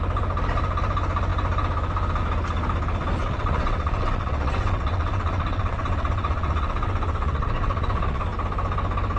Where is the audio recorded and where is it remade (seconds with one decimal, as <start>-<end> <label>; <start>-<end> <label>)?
0.0-3.2 recorded; 3.2-8.2 remade; 8.2-9.2 recorded